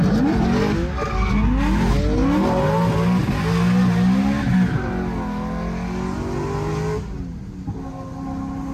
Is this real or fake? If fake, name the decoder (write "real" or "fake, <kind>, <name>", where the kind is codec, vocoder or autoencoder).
real